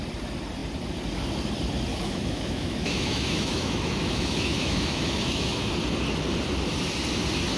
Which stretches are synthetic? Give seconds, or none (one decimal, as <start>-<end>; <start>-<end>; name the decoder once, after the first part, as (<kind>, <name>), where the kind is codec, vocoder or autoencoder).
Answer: 1.9-5.7 (autoencoder, DAC-VAE)